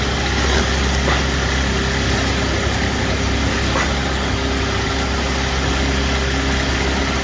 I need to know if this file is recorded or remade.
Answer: recorded